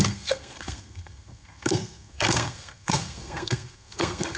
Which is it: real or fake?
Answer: fake